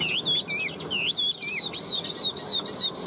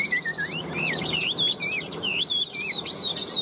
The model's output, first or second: second